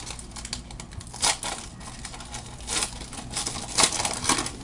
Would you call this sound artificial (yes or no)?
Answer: no